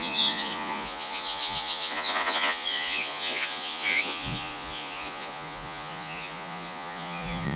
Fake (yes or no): yes